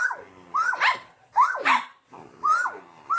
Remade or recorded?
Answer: recorded